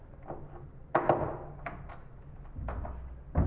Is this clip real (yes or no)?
yes